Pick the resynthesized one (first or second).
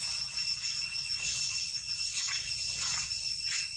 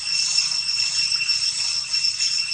first